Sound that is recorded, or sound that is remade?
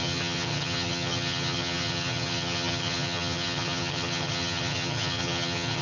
remade